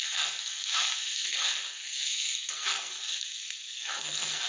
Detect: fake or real fake